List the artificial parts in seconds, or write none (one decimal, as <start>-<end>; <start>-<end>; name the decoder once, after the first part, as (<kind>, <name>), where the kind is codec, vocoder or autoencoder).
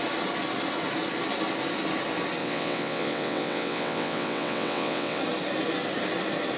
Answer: 2.4-5.2 (vocoder, WaveNeXt)